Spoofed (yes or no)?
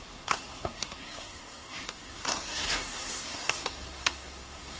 yes